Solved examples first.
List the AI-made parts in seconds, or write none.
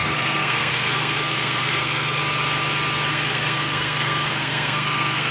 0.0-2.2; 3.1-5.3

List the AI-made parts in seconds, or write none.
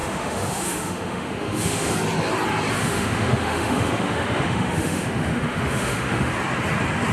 0.0-1.9; 2.8-6.3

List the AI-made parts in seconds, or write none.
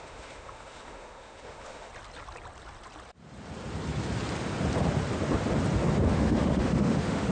0.0-1.9; 6.1-7.3